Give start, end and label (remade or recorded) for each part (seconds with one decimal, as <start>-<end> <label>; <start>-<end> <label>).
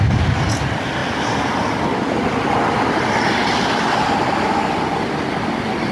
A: 0.0-5.9 recorded